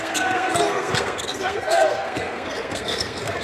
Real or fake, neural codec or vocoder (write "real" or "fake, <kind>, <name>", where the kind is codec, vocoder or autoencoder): fake, codec, SNAC